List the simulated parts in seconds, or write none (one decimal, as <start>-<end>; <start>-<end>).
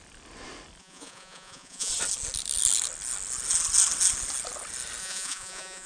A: 0.8-1.9; 5.0-5.9